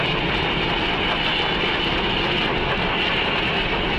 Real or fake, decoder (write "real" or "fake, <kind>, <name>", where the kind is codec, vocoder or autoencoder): real